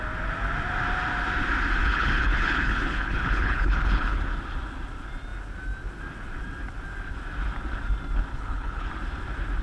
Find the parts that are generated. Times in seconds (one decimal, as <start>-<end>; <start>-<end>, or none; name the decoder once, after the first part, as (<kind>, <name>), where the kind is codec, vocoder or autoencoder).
1.8-4.4 (codec, HILCodec); 8.3-8.9